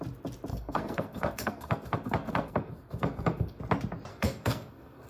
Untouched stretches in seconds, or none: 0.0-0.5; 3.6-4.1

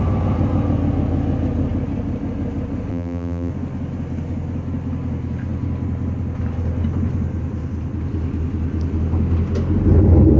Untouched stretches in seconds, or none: 0.0-2.9; 3.5-10.4

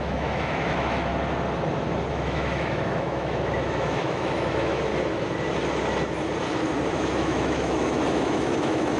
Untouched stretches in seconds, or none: 1.1-2.1; 4.9-6.9

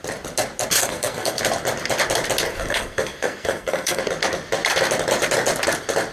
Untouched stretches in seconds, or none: 0.0-0.8; 1.4-2.5; 4.0-6.1

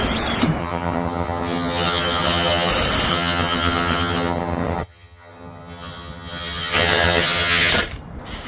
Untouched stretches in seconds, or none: 0.0-0.6; 2.7-3.1; 7.7-8.5

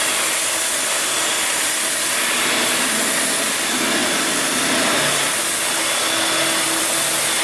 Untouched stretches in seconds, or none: 0.0-7.4

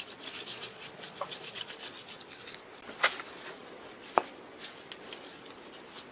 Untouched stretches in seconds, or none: 0.0-0.5; 1.7-6.1

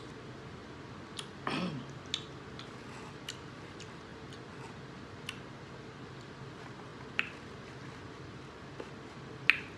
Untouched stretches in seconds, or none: 0.0-9.8